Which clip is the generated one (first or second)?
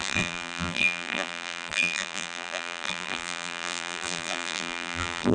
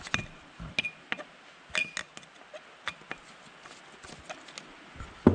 first